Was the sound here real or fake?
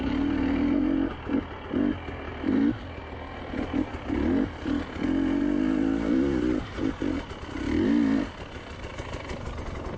real